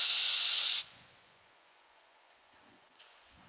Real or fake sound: fake